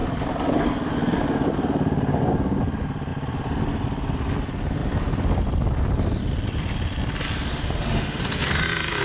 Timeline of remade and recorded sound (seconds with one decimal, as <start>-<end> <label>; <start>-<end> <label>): 0.0-7.5 recorded; 7.5-8.2 remade; 8.2-9.0 recorded